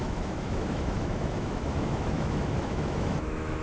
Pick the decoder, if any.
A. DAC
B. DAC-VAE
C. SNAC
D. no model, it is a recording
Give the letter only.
B